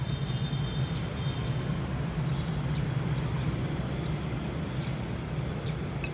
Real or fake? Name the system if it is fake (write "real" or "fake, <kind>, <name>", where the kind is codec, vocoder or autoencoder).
real